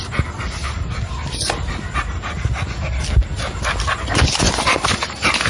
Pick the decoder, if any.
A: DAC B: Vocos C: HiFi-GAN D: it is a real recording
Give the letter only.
D